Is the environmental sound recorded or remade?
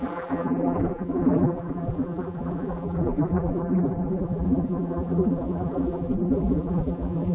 remade